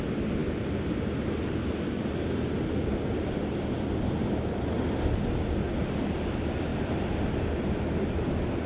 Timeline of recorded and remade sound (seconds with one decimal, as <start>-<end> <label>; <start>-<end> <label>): 0.0-8.7 recorded